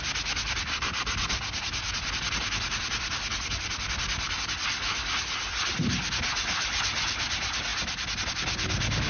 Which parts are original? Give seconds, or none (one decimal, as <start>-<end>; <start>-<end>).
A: 0.0-9.1